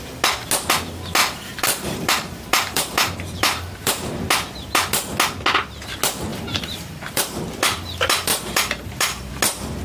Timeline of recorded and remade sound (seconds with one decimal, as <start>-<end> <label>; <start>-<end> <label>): 0.0-1.2 recorded; 1.2-4.3 remade; 4.3-6.3 recorded; 6.3-7.4 remade; 7.4-8.3 recorded; 8.3-9.3 remade; 9.3-9.8 recorded